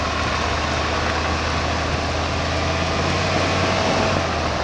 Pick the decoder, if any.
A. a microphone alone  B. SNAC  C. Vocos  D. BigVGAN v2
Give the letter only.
A